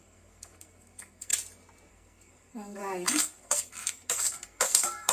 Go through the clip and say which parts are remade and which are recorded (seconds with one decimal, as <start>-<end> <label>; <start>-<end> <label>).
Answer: 0.0-1.3 remade; 1.3-1.9 recorded; 1.9-5.1 remade